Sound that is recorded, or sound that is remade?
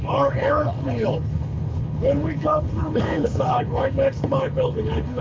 remade